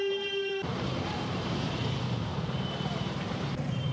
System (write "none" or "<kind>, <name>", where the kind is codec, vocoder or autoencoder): vocoder, BigVGAN v2